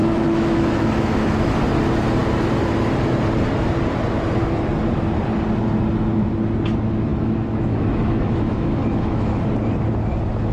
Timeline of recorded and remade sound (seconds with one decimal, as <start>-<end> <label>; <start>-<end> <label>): 0.0-1.5 remade; 1.5-7.1 recorded; 7.1-9.4 remade; 9.4-10.5 recorded